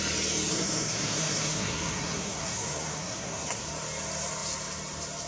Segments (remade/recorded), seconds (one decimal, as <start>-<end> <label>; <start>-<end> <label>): 0.0-0.5 recorded; 0.5-3.7 remade; 3.7-5.3 recorded